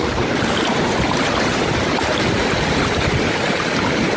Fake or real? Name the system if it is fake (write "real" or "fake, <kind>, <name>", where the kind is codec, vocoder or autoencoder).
real